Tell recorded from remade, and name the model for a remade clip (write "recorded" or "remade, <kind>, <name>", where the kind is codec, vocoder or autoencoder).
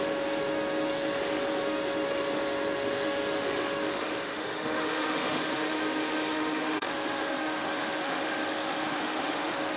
remade, autoencoder, DAC-VAE